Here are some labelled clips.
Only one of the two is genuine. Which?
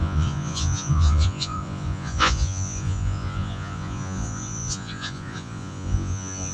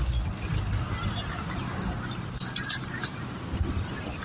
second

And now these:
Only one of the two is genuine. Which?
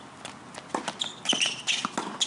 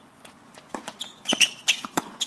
first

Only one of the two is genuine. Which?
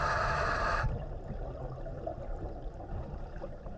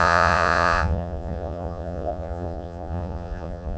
first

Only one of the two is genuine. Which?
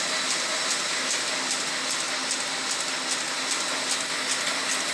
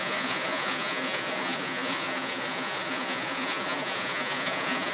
first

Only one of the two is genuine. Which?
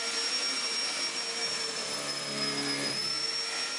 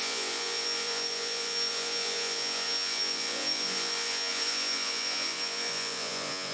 first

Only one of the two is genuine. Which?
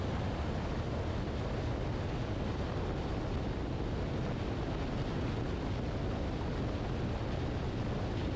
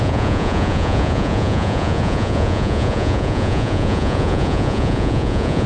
first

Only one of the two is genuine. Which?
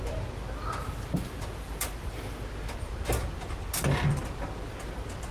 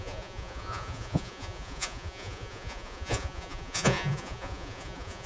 first